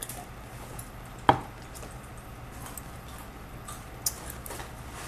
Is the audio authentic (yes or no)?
yes